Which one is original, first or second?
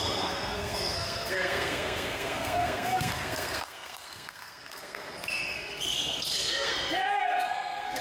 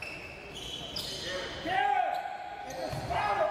second